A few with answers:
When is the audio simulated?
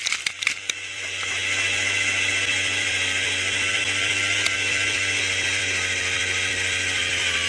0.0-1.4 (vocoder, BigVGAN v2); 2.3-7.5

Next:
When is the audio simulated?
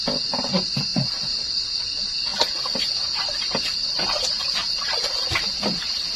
none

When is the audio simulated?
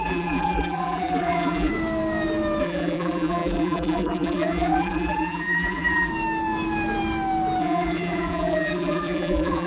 0.0-1.7 (vocoder, BigVGAN v2); 2.6-6.1; 7.6-9.7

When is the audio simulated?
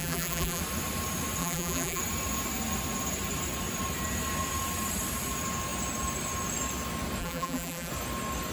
0.0-0.6 (vocoder, BigVGAN v2); 1.4-2.0; 7.2-7.9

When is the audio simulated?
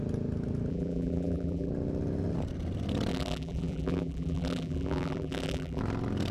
0.7-1.7 (vocoder, BigVGAN v2); 3.1-5.8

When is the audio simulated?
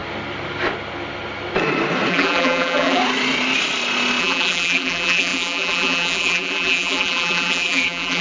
2.1-3.0 (vocoder, BigVGAN v2); 4.2-8.2